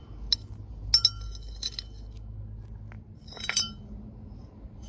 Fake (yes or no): no